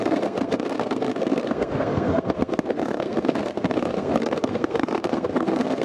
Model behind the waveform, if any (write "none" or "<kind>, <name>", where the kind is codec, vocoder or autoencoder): codec, SNAC